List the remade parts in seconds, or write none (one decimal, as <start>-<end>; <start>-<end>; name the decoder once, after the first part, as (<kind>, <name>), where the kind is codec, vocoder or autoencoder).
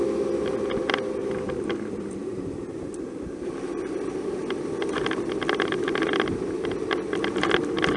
1.2-2.5 (vocoder, BigVGAN v2)